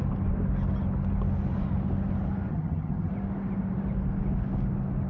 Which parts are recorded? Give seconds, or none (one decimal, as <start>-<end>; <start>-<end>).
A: 0.0-2.5; 3.1-5.1